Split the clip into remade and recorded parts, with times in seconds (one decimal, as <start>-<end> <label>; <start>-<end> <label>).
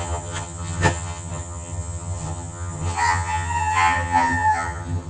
0.0-5.1 remade